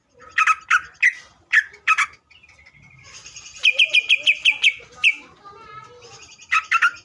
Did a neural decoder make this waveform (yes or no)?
no